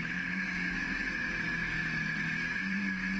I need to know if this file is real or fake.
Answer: fake